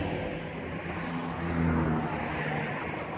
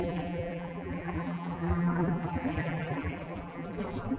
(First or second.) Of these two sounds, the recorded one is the first